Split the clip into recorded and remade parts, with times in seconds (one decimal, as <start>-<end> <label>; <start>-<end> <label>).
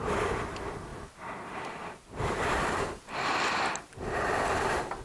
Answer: 0.0-0.9 recorded; 0.9-3.9 remade; 3.9-5.0 recorded